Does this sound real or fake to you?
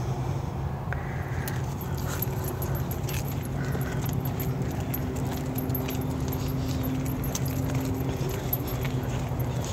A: real